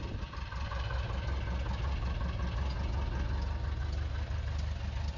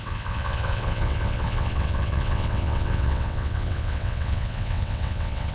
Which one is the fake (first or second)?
second